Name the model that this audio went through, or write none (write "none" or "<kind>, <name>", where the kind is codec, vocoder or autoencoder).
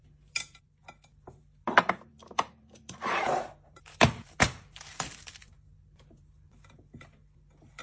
vocoder, BigVGAN v2